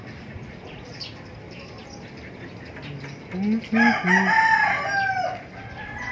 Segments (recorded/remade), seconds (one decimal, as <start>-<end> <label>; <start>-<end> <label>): 0.0-6.1 recorded